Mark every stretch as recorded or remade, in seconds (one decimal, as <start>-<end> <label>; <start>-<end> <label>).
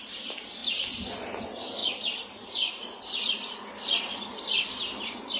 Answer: 0.0-5.4 recorded